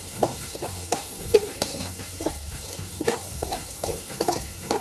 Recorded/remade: remade